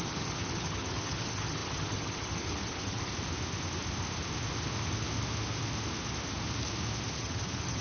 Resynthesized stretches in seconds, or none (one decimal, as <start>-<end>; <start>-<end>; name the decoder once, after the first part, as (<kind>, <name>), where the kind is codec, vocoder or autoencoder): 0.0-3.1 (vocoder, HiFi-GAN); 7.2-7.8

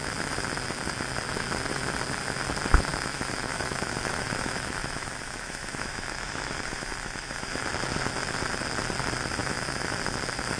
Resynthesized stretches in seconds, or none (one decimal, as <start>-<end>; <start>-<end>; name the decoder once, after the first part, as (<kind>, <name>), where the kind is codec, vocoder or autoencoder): 2.9-7.7 (autoencoder, DAC-VAE); 9.4-10.0

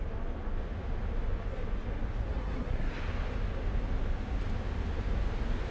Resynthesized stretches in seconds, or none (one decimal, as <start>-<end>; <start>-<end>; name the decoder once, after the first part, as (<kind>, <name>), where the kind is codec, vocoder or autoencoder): 2.3-3.0 (codec, SNAC)